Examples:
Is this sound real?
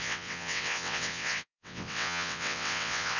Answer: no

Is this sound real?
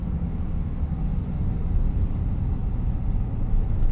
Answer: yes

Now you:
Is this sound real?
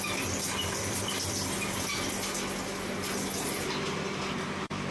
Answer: yes